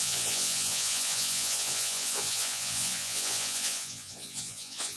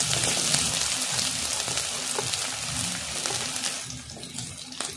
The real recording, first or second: second